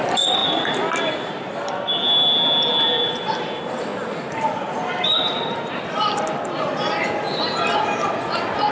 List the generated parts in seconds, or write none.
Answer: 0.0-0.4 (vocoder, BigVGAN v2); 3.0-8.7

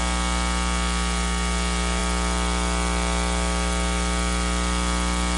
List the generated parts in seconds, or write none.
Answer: 2.0-5.4 (vocoder, BigVGAN v2)

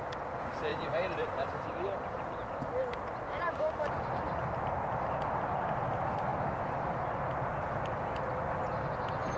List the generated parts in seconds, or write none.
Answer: 0.7-3.7 (vocoder, BigVGAN v2)

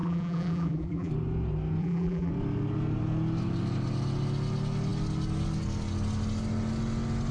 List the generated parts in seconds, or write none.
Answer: 0.0-1.1 (vocoder, BigVGAN v2); 1.8-2.3